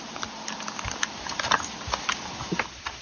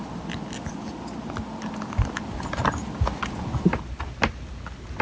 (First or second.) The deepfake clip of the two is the first